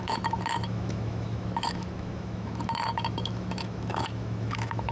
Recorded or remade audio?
remade